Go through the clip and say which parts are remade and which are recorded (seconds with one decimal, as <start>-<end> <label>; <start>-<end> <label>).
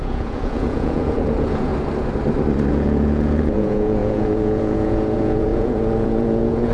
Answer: 0.0-1.7 remade; 1.7-2.7 recorded; 2.7-6.7 remade